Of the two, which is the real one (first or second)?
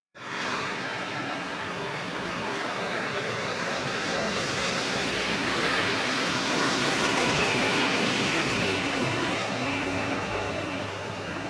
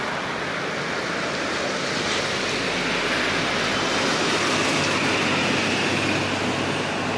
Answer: second